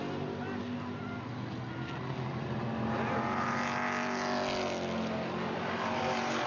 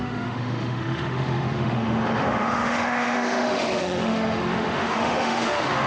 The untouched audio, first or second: first